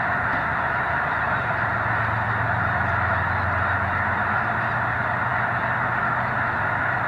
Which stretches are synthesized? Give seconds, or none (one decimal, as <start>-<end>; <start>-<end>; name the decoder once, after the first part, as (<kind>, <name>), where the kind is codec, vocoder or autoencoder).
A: none